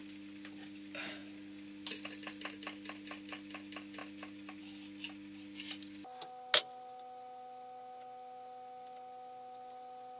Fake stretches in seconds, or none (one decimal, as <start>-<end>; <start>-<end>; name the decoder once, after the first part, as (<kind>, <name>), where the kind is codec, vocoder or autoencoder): none